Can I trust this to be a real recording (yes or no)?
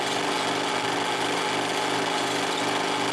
yes